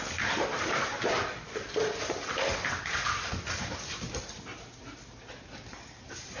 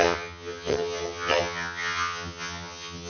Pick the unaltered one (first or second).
first